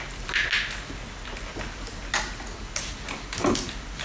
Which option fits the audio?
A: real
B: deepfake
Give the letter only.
A